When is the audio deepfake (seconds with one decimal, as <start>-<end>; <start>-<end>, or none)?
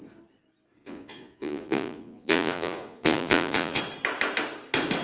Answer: 0.8-3.8